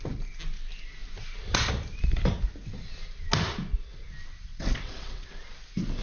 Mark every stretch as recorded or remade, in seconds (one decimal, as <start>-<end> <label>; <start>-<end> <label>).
0.0-4.5 recorded; 4.5-5.3 remade; 5.3-6.0 recorded